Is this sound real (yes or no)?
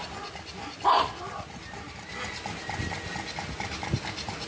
yes